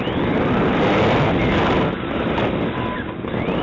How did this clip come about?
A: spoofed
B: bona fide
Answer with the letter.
B